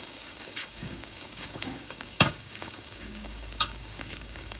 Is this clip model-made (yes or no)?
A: yes